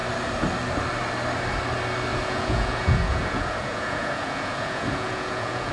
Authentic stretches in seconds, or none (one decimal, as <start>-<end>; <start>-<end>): 0.0-2.1